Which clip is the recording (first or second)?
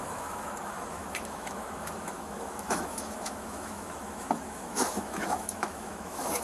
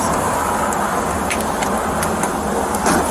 second